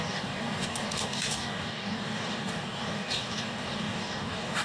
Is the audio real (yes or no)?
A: no